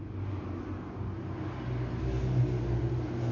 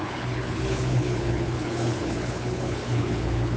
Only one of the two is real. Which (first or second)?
first